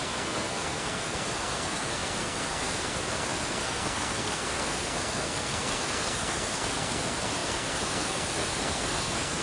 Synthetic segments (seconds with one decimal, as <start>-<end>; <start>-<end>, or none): 0.0-9.4